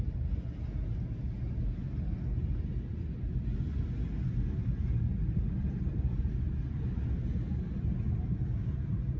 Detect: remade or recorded recorded